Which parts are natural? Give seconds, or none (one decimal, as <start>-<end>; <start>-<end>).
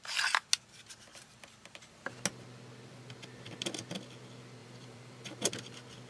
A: 0.0-1.1; 1.9-4.6; 5.5-6.1